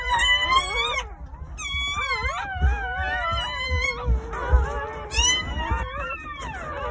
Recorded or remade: recorded